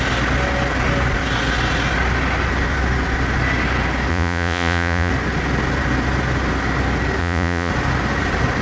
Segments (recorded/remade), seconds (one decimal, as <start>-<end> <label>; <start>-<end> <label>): 0.0-4.1 recorded; 4.1-5.1 remade; 5.1-7.2 recorded; 7.2-7.7 remade; 7.7-8.6 recorded